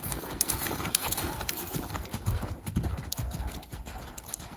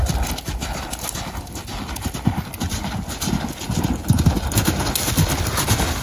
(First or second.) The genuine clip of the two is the second